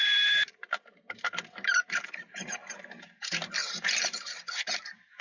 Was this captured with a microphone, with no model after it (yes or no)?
no